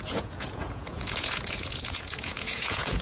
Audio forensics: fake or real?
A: fake